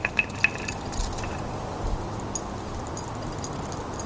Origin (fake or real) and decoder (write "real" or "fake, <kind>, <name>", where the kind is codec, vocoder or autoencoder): real